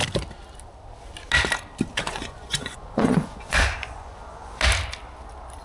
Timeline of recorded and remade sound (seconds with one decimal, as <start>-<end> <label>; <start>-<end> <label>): 0.0-1.9 recorded; 1.9-4.6 remade; 4.6-5.6 recorded